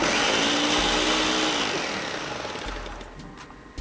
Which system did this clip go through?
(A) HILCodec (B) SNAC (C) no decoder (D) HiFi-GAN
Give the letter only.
C